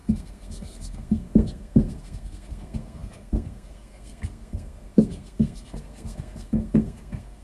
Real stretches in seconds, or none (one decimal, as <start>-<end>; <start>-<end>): none